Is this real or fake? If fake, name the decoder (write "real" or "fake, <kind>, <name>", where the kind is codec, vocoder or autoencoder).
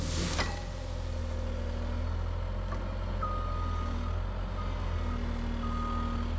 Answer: real